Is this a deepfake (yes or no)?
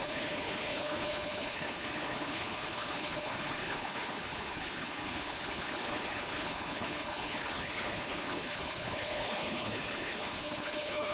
yes